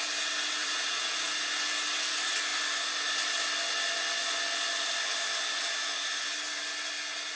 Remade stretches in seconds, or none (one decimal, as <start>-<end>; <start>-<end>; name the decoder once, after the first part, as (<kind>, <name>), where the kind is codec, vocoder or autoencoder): 0.6-1.5 (vocoder, Vocos)